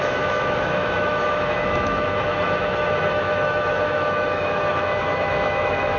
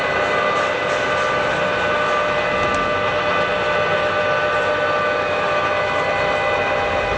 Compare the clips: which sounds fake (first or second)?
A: first